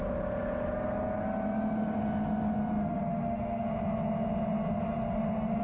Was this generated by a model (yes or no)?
no